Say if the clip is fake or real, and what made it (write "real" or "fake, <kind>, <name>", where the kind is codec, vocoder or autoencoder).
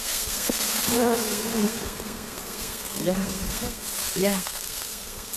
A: fake, codec, SNAC